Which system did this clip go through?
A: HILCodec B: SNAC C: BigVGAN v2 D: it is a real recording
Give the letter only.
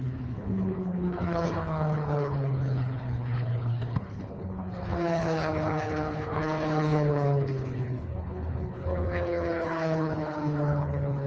A